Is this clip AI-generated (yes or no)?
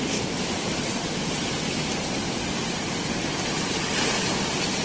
no